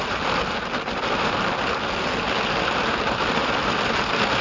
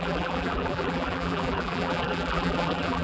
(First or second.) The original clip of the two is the first